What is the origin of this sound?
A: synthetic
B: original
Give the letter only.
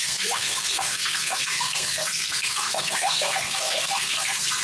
A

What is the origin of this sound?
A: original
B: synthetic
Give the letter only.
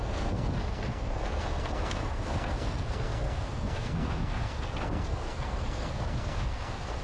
B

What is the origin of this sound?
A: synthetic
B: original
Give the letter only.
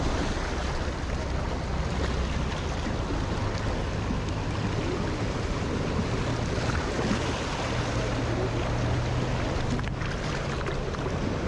B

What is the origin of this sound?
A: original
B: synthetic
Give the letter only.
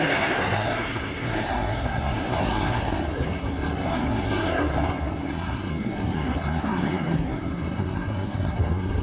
B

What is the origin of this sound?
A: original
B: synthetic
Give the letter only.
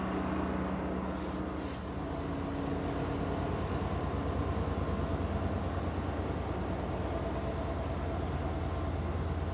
A